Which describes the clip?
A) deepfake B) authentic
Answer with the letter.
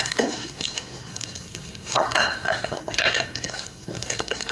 A